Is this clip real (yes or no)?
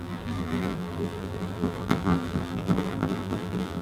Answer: no